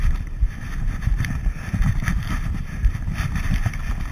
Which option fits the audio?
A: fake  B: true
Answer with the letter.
A